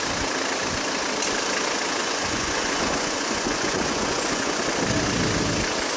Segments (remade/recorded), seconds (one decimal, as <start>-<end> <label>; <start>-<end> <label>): 0.0-2.0 recorded; 2.0-4.6 remade; 4.6-6.0 recorded